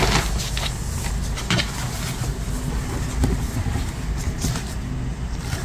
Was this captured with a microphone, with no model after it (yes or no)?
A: yes